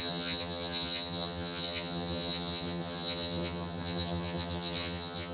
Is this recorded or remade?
remade